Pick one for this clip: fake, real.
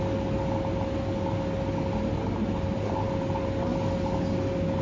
real